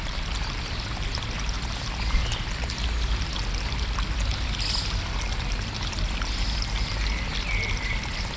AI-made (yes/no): no